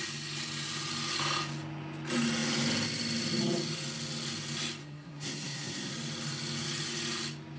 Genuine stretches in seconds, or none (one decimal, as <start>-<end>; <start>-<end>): 0.0-4.8; 5.9-7.6